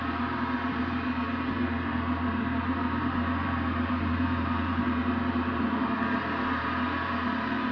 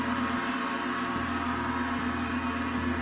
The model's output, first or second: first